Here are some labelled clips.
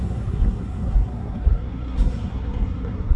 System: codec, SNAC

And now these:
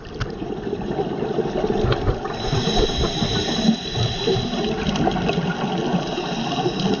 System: none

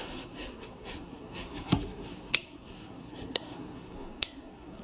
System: codec, SNAC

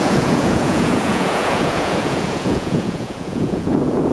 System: vocoder, Vocos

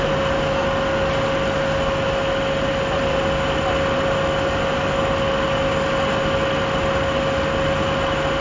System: none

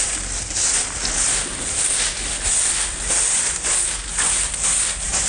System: none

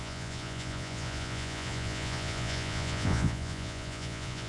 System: vocoder, Vocos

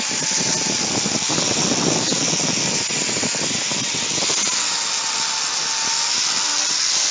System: none